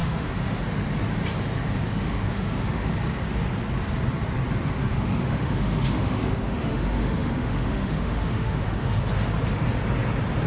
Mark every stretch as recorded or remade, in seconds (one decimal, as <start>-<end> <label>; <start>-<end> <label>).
0.0-0.6 remade; 0.6-1.9 recorded; 1.9-2.9 remade; 2.9-4.8 recorded; 4.8-9.0 remade; 9.0-10.5 recorded